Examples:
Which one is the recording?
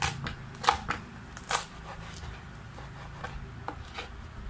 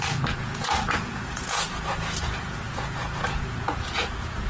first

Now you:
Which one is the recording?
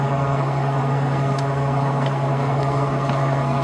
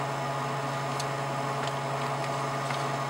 second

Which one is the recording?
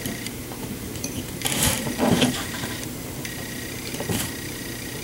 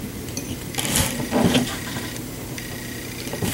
second